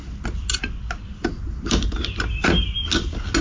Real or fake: real